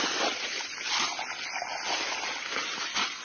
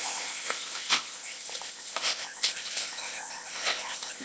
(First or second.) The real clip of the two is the first